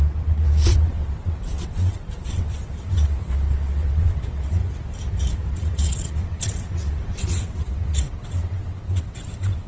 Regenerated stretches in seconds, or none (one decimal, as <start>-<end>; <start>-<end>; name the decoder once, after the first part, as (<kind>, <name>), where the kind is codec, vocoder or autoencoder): 0.0-4.6 (vocoder, WaveNeXt); 5.3-9.7